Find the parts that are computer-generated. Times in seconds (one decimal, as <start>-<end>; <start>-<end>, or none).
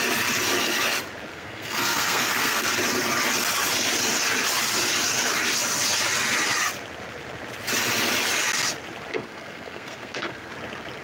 1.3-2.7; 9.1-10.5